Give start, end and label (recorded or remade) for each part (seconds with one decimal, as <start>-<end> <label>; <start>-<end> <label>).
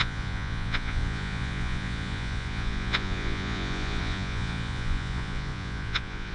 0.0-6.3 remade